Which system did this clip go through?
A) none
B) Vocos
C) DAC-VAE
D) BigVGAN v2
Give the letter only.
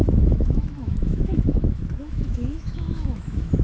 C